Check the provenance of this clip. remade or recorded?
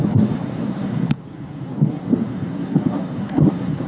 remade